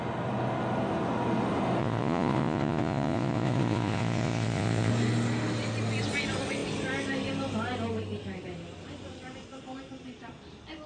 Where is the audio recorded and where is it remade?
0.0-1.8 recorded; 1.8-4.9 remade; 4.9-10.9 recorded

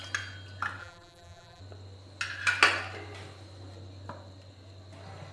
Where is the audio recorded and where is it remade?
0.0-0.8 recorded; 0.8-1.6 remade; 1.6-5.3 recorded

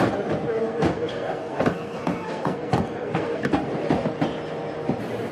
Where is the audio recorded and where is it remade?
0.0-0.6 recorded; 0.6-3.7 remade; 3.7-5.3 recorded